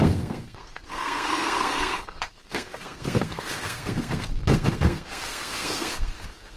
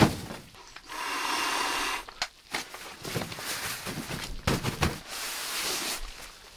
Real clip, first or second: second